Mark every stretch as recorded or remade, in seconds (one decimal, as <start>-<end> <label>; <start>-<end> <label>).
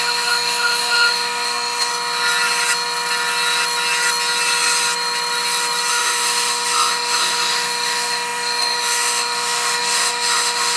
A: 0.0-1.9 remade; 1.9-5.9 recorded; 5.9-10.8 remade